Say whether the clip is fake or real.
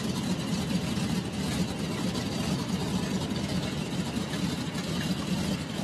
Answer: real